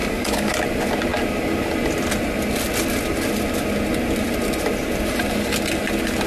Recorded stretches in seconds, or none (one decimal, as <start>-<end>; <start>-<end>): 0.5-6.3